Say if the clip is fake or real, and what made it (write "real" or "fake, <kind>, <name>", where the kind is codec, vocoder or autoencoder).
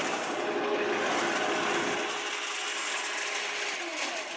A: real